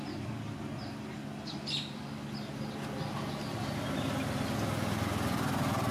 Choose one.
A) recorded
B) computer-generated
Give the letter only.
A